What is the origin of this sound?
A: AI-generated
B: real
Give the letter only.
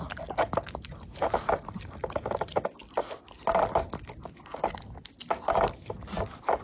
B